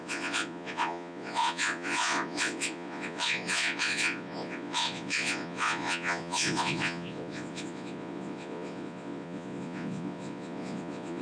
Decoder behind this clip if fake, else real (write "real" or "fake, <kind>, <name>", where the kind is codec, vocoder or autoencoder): fake, vocoder, Vocos